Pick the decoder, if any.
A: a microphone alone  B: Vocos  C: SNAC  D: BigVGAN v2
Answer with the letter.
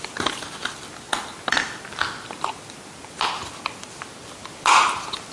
A